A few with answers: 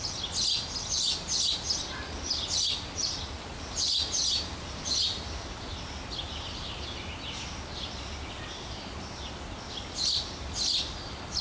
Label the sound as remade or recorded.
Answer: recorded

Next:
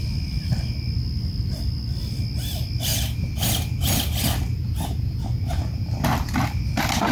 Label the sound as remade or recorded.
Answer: recorded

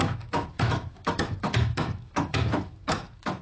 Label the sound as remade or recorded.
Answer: remade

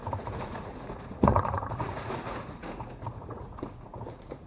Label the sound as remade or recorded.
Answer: remade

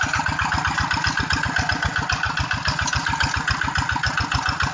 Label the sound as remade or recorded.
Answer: recorded